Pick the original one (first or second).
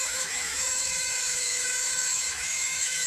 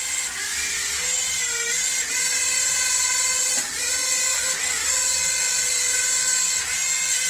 second